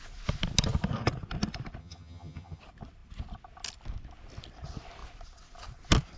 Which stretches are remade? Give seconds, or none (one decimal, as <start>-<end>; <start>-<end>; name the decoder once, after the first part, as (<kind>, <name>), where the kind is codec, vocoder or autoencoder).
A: 1.8-2.6 (vocoder, HiFi-GAN)